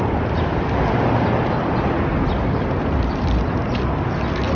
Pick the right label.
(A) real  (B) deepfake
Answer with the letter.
A